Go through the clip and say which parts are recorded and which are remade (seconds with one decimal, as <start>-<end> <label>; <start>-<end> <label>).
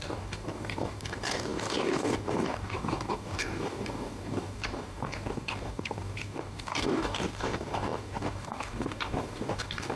0.0-10.0 remade